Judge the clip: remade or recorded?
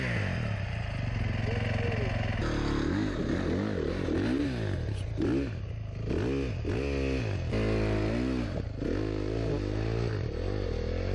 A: recorded